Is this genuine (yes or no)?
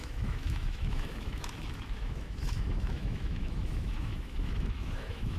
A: no